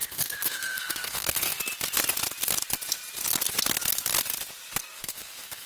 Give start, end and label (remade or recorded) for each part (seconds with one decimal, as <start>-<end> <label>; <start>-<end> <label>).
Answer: 0.0-1.6 remade; 1.6-5.0 recorded; 5.0-5.7 remade